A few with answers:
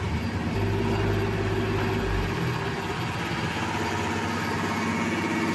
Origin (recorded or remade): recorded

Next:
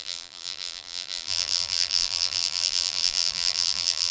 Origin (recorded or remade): remade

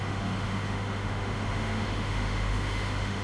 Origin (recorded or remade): remade